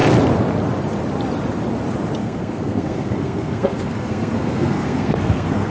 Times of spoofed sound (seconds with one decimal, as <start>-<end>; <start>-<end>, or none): 2.2-5.7